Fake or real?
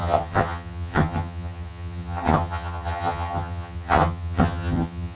fake